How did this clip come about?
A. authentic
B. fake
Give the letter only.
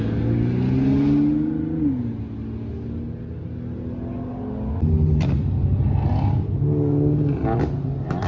A